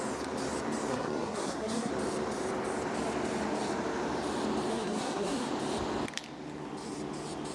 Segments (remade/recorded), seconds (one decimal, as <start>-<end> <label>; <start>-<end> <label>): 0.0-0.9 recorded; 0.9-1.9 remade; 1.9-4.7 recorded; 4.7-5.5 remade; 5.5-7.5 recorded